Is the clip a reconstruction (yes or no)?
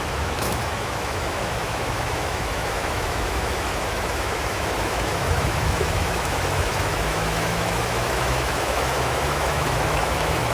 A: yes